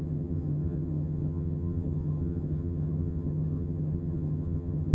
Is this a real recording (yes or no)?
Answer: no